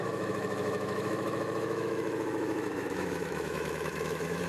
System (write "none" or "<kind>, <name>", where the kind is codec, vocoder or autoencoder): autoencoder, DAC-VAE